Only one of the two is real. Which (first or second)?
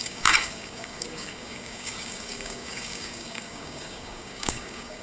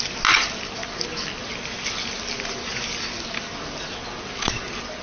second